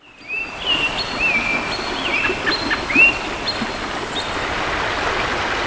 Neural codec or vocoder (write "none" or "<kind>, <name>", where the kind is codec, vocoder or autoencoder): none